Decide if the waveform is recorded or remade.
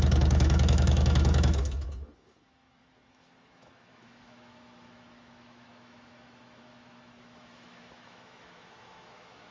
remade